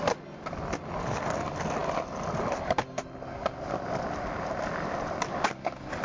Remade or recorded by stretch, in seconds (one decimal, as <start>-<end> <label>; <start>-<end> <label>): 0.0-6.0 recorded